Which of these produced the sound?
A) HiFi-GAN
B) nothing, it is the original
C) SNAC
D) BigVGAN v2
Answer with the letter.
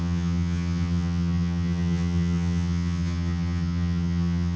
A